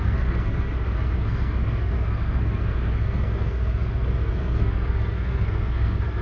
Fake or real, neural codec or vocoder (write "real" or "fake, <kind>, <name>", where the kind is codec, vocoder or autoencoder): fake, codec, SNAC